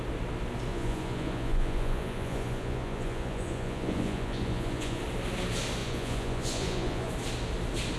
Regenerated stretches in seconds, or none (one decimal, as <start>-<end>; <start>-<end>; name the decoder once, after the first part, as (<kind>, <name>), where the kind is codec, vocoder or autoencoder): 0.7-5.0 (vocoder, Vocos); 5.8-7.1